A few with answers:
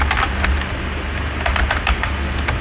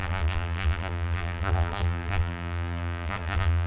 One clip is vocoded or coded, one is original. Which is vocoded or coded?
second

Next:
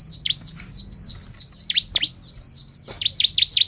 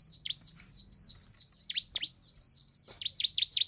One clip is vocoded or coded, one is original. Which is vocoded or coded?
second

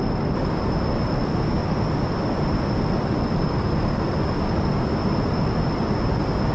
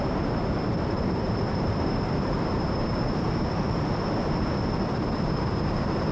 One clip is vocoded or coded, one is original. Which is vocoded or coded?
second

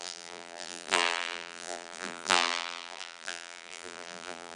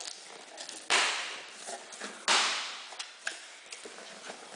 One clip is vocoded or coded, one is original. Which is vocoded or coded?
first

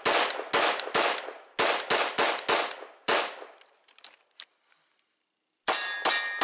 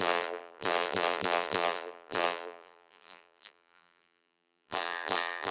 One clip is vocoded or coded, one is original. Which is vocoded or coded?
second